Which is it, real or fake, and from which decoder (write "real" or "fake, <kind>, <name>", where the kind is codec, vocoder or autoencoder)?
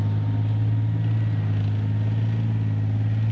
real